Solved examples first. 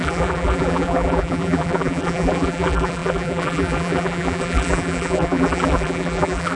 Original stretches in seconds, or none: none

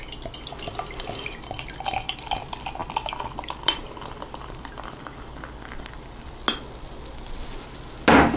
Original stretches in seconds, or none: 0.0-8.4

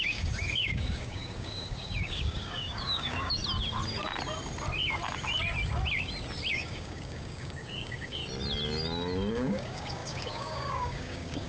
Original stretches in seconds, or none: 3.4-6.5; 8.2-9.3

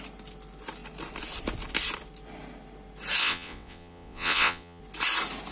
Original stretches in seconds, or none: 0.0-3.2; 4.8-5.5

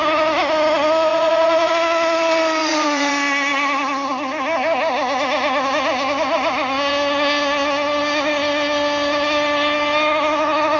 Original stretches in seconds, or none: 0.0-1.1; 1.7-2.6; 3.1-10.8

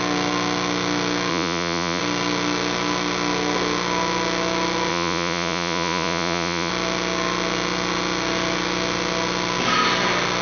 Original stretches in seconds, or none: 0.0-1.3; 2.0-4.9; 6.7-10.4

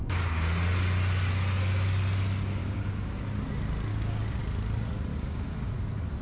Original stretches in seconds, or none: 0.0-2.6; 3.2-3.9; 4.4-5.1; 5.7-6.2